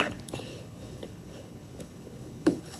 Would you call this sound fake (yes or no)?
yes